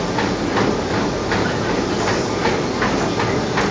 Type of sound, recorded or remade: recorded